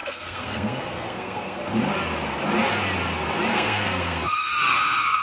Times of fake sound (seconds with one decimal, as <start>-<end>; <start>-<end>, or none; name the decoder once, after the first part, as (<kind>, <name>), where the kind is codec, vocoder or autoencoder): 0.0-1.6 (codec, SNAC); 3.5-5.2